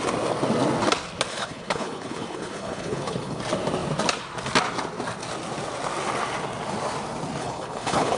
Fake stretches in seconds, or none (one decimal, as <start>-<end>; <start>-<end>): 1.3-3.4; 7.4-8.2